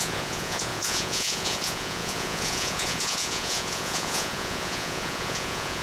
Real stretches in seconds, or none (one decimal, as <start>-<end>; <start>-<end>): none